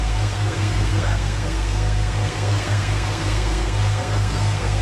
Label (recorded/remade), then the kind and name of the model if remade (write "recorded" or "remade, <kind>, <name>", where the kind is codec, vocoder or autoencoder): remade, codec, SNAC